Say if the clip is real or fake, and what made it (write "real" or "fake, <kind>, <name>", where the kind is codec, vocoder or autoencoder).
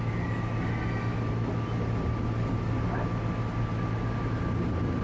real